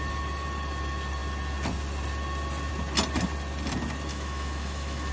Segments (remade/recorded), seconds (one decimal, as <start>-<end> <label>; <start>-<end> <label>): 0.0-4.1 recorded; 4.1-5.1 remade